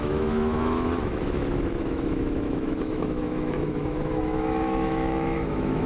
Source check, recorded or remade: remade